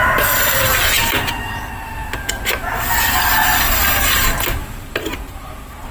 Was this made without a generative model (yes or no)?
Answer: yes